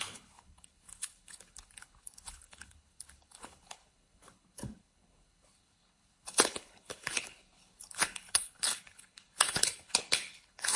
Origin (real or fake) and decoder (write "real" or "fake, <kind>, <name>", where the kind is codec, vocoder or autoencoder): fake, codec, HILCodec